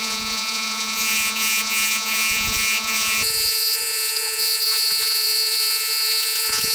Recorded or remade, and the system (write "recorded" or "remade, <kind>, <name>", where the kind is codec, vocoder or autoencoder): remade, vocoder, Vocos